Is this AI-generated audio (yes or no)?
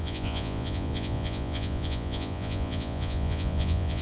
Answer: yes